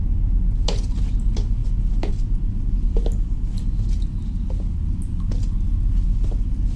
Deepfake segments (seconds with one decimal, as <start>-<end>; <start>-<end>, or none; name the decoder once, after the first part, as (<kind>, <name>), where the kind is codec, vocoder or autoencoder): none